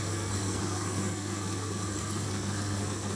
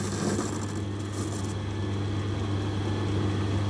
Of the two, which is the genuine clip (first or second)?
second